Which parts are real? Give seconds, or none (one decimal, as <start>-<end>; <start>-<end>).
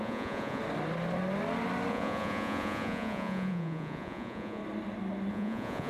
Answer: 0.6-1.9; 4.6-5.3